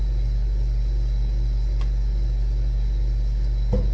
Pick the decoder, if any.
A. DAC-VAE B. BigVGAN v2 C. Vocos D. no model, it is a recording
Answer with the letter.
D